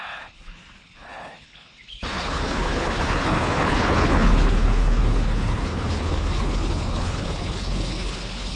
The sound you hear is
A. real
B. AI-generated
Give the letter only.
B